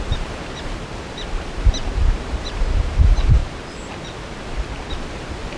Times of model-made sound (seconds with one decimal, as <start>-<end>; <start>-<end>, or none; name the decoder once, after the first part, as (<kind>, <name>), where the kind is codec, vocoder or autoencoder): 0.0-3.4 (vocoder, BigVGAN v2); 4.9-5.6

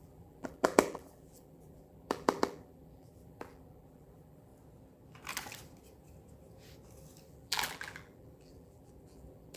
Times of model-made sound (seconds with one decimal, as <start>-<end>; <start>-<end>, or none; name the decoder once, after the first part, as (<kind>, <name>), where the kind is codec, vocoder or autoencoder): 0.0-4.5 (vocoder, BigVGAN v2); 7.3-9.6

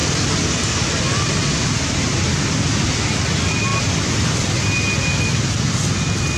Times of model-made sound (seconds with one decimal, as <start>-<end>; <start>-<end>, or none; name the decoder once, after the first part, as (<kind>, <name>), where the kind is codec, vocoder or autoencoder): none

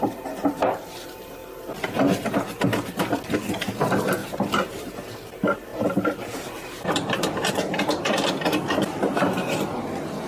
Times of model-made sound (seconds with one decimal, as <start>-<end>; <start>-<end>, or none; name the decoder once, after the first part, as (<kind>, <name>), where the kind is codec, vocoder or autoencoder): 4.2-4.9 (vocoder, BigVGAN v2); 5.7-7.5

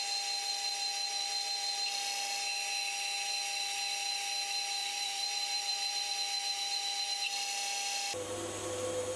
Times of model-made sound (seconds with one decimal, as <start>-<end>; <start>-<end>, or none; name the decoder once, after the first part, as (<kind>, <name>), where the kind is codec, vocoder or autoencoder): 4.8-6.1 (vocoder, BigVGAN v2)

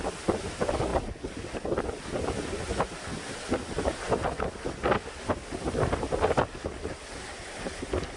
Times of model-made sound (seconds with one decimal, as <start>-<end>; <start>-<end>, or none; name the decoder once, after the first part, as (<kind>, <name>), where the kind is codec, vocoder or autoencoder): none

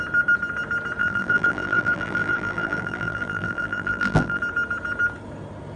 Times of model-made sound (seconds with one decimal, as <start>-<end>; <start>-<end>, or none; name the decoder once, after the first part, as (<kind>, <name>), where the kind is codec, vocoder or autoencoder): 1.0-4.4 (vocoder, BigVGAN v2)